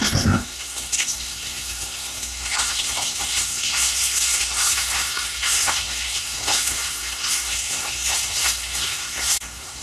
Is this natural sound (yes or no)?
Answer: no